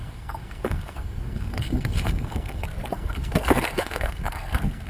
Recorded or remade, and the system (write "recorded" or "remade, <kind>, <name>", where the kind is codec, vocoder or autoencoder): remade, codec, SNAC